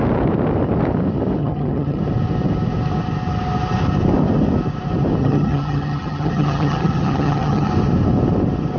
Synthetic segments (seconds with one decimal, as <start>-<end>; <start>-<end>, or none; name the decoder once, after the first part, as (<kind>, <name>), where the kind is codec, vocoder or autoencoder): 1.4-2.0 (vocoder, HiFi-GAN); 5.2-7.7